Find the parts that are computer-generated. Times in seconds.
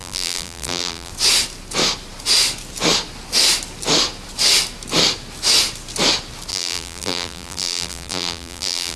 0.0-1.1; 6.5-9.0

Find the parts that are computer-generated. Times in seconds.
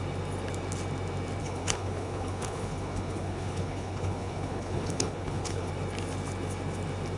1.4-5.7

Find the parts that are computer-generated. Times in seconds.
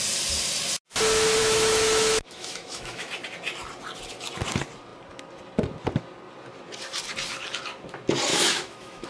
1.4-3.1; 8.3-9.1